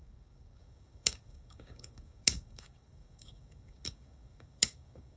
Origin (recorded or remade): remade